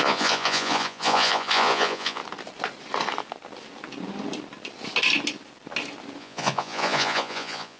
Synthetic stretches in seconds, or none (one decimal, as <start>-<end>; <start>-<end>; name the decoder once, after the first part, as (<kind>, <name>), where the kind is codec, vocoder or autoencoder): 0.0-2.2 (vocoder, Vocos); 6.2-7.8